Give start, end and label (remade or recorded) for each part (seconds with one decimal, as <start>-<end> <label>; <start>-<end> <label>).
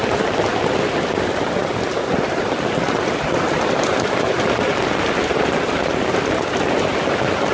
0.0-0.6 remade; 0.6-7.5 recorded